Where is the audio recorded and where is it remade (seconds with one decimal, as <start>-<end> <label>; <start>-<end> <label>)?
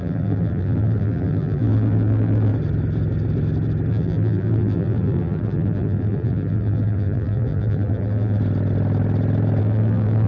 0.0-2.5 remade; 2.5-3.9 recorded; 3.9-8.4 remade; 8.4-9.6 recorded; 9.6-10.3 remade